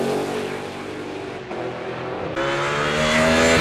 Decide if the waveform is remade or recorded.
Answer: recorded